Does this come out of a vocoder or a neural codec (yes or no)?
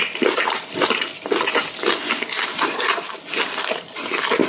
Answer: no